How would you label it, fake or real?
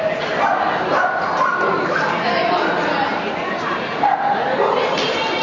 real